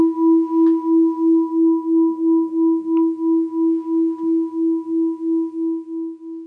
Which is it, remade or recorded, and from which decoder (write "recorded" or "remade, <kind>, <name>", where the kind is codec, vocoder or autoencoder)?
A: recorded